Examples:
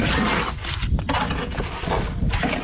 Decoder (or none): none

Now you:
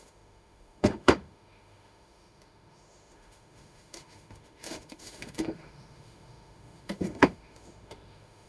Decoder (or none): autoencoder, DAC-VAE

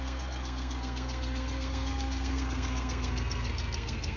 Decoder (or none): codec, SNAC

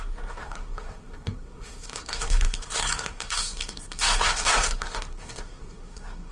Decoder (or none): codec, SNAC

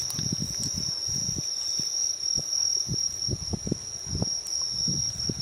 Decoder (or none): none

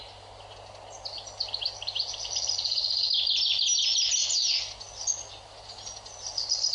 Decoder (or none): none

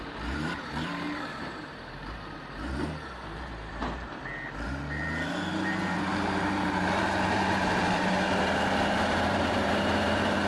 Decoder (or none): vocoder, BigVGAN v2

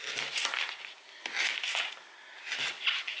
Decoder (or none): none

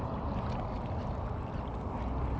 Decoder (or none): none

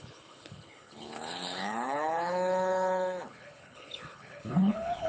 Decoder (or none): codec, HILCodec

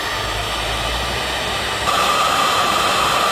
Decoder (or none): none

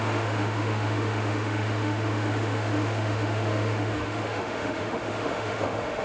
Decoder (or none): autoencoder, DAC-VAE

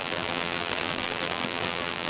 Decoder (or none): vocoder, BigVGAN v2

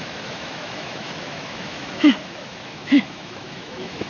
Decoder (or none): autoencoder, DAC-VAE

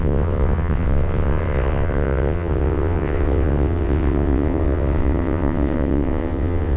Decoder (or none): vocoder, WaveNeXt